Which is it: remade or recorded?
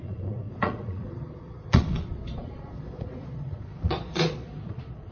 remade